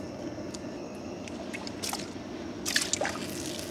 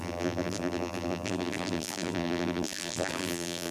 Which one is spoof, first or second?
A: second